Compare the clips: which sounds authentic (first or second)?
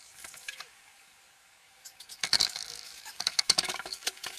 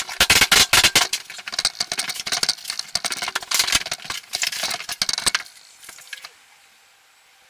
second